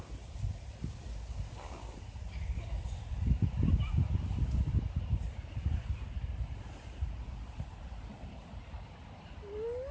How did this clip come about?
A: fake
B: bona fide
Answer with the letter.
B